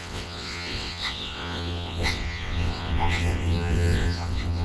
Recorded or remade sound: remade